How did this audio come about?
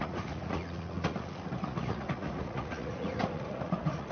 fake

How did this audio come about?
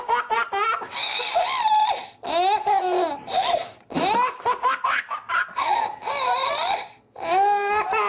real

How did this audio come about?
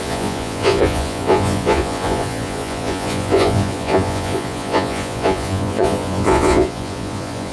fake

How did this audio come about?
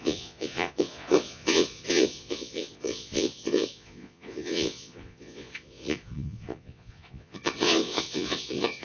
fake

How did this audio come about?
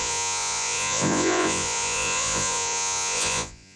fake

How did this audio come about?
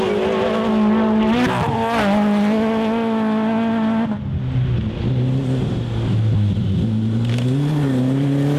real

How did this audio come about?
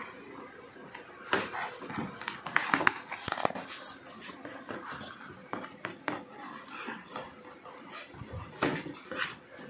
real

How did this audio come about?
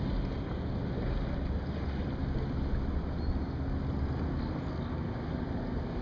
real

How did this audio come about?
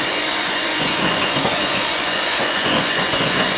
fake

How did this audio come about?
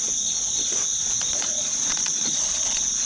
fake